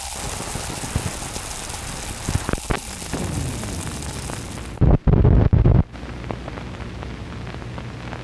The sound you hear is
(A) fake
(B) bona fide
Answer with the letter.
B